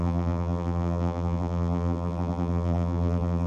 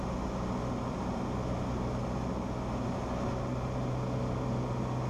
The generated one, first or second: first